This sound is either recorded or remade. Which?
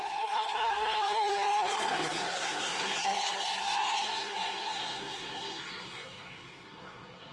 remade